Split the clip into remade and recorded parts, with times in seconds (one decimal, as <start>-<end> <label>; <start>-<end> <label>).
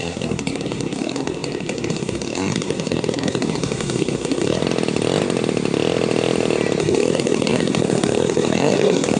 0.0-4.6 remade; 4.6-6.8 recorded; 6.8-9.2 remade